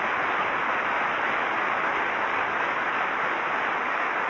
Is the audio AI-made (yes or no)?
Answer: no